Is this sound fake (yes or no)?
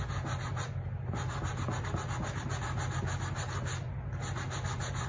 no